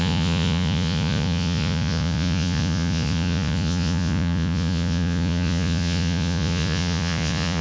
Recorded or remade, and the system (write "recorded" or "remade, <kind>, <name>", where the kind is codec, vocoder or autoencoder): remade, vocoder, Vocos